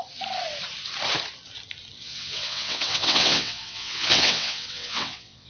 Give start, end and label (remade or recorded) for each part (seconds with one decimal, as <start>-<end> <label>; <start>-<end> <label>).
0.0-2.0 recorded; 2.0-5.5 remade